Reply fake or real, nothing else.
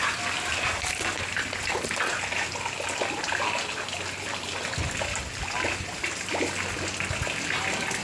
real